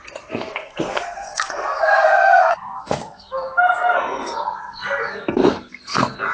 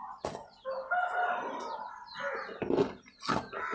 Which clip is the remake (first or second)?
first